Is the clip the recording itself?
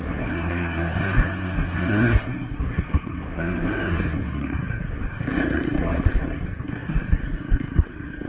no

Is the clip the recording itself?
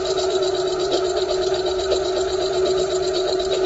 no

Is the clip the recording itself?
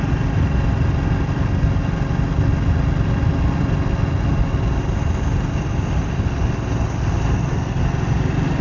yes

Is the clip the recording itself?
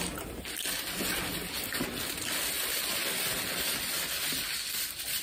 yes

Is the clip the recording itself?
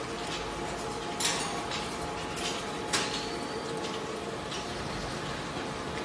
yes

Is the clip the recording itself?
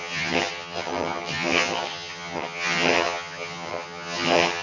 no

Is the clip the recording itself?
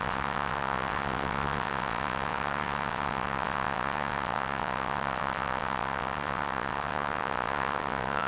no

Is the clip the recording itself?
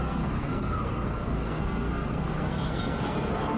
no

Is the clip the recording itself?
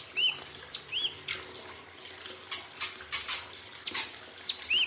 yes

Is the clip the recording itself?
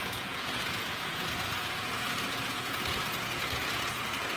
no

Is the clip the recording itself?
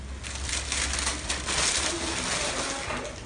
yes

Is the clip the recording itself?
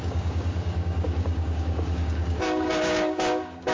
no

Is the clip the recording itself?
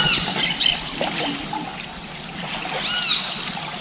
yes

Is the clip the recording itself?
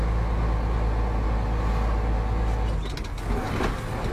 yes